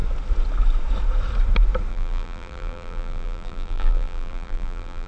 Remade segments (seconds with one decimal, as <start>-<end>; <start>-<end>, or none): 1.9-5.1